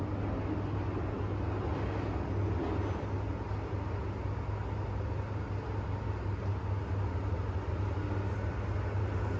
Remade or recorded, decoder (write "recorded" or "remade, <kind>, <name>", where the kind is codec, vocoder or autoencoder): recorded